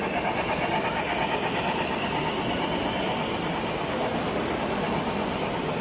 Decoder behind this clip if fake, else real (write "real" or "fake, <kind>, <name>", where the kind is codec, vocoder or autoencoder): real